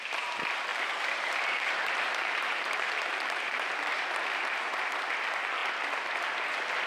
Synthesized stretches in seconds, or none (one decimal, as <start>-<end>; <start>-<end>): 0.7-4.8